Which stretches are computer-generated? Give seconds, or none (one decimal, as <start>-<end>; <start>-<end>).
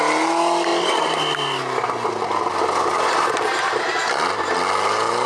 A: none